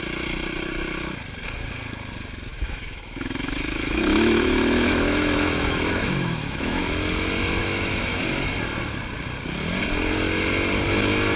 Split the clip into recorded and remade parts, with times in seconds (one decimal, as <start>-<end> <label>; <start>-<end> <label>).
0.0-2.5 recorded; 2.5-6.8 remade; 6.8-7.6 recorded; 7.6-8.2 remade; 8.2-11.4 recorded